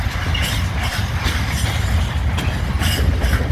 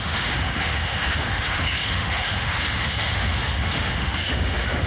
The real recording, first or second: first